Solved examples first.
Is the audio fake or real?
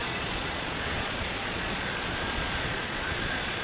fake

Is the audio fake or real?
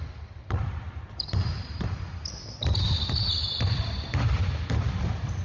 fake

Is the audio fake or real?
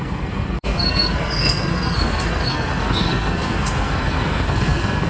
fake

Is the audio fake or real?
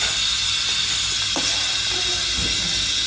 real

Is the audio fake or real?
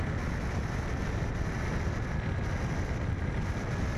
real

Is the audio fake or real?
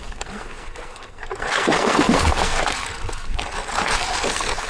fake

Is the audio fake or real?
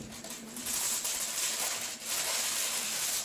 fake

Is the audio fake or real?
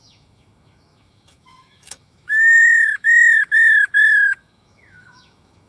fake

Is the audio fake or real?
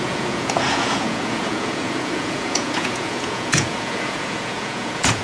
fake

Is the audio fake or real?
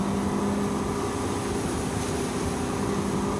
real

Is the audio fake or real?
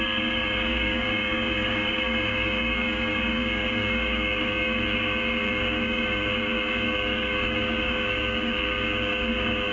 fake